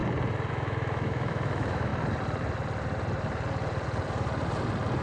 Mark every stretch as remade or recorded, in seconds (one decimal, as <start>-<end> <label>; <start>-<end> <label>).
0.0-0.5 recorded; 0.5-1.9 remade; 1.9-5.0 recorded